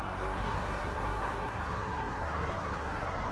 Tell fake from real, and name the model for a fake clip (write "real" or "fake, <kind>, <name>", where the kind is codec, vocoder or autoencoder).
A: fake, codec, SNAC